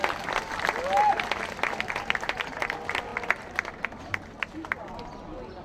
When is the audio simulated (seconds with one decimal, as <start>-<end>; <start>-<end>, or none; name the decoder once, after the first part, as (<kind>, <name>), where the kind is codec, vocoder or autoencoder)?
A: none